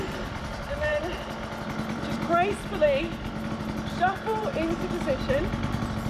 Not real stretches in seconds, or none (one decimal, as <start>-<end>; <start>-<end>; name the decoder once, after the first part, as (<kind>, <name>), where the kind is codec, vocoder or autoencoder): none